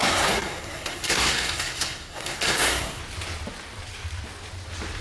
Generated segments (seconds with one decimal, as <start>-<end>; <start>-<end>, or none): 0.0-3.0